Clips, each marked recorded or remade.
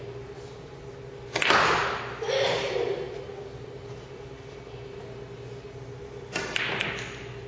recorded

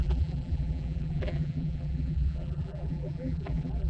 remade